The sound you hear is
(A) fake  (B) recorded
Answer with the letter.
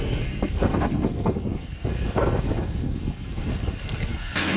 A